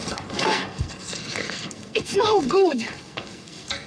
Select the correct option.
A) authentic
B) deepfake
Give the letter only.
B